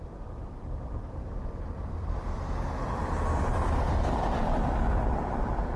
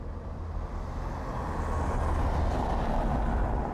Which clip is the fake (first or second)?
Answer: first